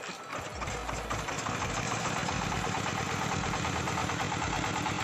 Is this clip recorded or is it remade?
recorded